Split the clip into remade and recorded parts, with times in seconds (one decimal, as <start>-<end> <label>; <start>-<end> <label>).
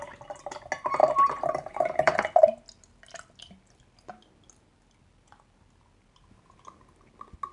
0.0-1.0 recorded; 1.0-2.4 remade; 2.4-7.5 recorded